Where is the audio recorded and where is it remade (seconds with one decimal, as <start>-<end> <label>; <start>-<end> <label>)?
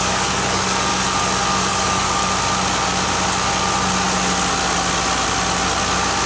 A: 0.0-0.9 remade; 0.9-1.7 recorded; 1.7-2.2 remade; 2.2-6.3 recorded